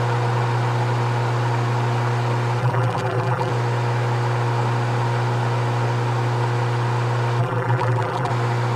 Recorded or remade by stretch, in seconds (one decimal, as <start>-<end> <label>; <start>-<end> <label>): 0.0-2.6 recorded; 2.6-3.5 remade; 3.5-7.4 recorded; 7.4-8.3 remade; 8.3-8.8 recorded